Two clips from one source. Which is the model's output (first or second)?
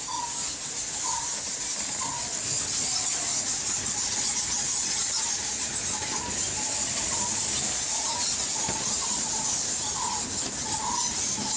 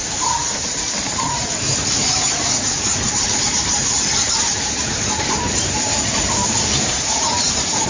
second